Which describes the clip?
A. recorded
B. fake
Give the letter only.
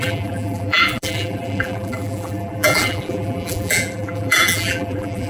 B